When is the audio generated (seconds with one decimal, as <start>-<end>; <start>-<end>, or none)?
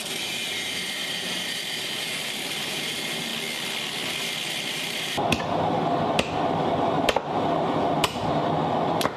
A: 0.0-3.3; 4.7-8.4